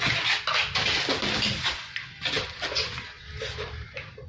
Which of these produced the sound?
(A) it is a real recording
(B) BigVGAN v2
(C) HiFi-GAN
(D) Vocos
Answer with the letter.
A